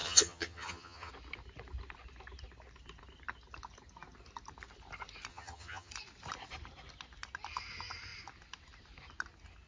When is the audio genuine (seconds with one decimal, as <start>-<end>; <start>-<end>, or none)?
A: 1.1-5.3; 5.9-9.7